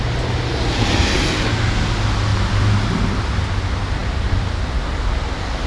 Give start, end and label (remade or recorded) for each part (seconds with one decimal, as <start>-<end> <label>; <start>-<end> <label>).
0.0-2.3 recorded; 2.3-3.0 remade; 3.0-5.7 recorded